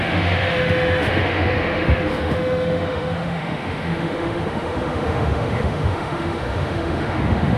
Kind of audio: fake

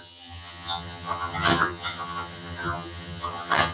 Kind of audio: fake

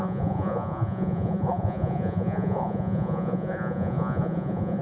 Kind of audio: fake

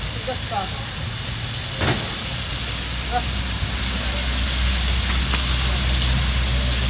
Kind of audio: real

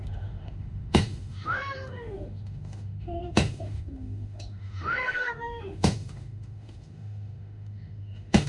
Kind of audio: fake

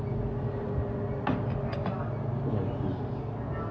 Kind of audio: real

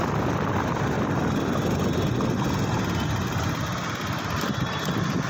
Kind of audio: real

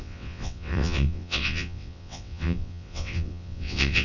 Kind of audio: fake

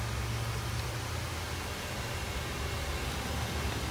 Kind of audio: real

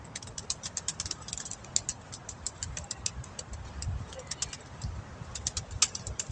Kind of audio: real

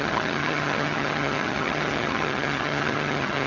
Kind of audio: fake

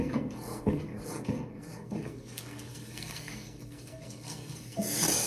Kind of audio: fake